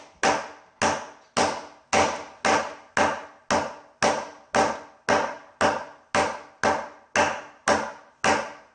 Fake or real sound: real